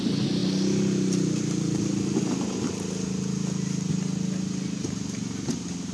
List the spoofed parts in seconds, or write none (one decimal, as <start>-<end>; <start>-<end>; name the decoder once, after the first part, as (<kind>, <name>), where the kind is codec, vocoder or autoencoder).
none